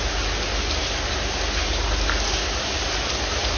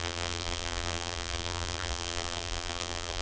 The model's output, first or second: second